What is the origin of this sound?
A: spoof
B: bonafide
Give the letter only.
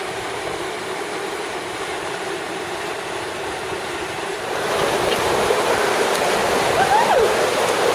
A